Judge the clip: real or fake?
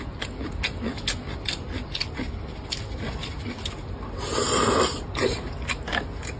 real